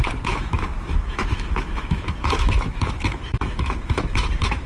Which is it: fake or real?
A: fake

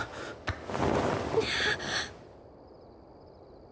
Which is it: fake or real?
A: real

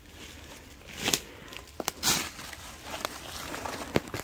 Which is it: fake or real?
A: real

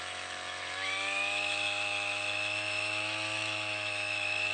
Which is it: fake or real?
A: fake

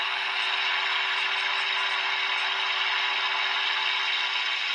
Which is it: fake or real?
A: real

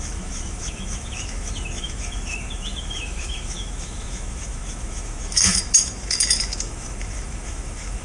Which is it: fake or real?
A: fake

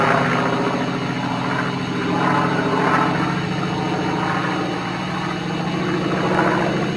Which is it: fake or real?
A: real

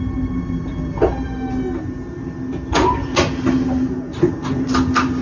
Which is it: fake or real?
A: real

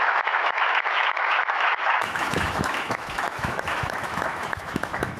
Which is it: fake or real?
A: fake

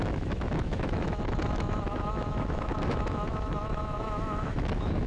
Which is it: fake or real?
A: fake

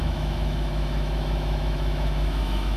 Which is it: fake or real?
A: fake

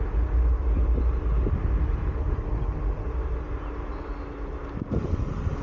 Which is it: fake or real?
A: real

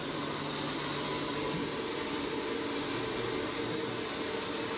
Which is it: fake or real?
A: real